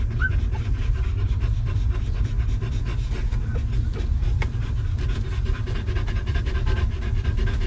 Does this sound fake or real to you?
real